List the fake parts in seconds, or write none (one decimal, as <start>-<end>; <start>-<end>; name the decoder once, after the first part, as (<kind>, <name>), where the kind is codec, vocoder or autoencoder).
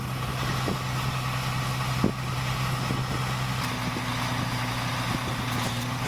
none